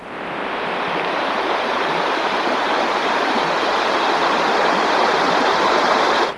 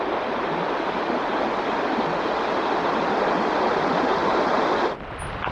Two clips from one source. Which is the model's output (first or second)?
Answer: first